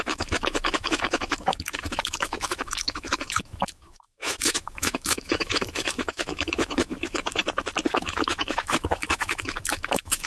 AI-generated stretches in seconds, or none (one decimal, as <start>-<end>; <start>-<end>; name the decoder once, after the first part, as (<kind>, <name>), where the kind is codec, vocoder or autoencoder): 0.0-7.4 (autoencoder, DAC-VAE); 7.9-10.3